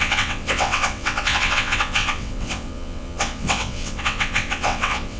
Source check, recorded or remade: remade